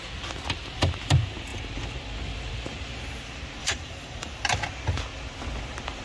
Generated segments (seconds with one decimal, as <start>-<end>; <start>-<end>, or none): 3.6-4.3